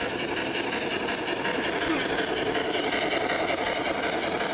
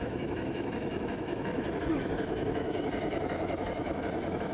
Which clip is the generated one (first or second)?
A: second